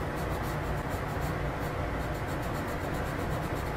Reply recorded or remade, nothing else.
recorded